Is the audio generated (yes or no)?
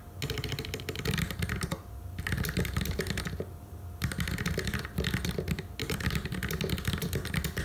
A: no